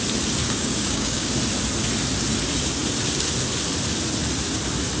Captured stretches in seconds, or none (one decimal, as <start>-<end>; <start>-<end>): 0.0-0.4; 1.3-5.0